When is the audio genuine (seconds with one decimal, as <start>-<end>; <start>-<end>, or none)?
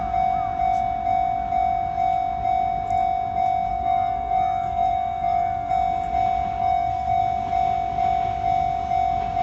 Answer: 0.0-3.7; 5.7-6.6; 7.2-9.4